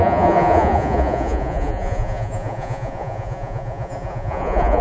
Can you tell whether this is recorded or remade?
remade